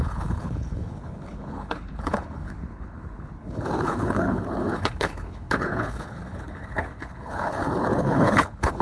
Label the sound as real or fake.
fake